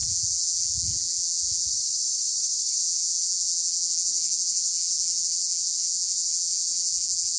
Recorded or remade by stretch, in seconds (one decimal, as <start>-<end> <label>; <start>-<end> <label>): 0.0-1.7 remade; 1.7-2.8 recorded; 2.8-7.4 remade